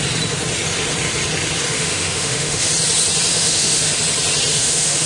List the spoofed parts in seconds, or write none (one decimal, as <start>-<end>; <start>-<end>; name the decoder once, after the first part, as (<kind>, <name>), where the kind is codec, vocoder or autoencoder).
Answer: 1.7-2.7 (autoencoder, DAC-VAE); 3.3-3.9; 4.5-5.1